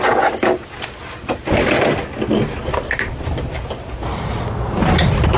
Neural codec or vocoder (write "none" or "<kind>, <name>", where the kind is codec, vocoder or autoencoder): none